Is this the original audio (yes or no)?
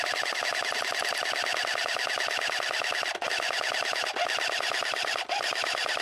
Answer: yes